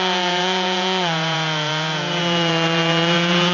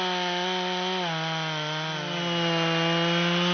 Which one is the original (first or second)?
second